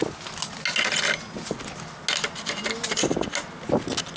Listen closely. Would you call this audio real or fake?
real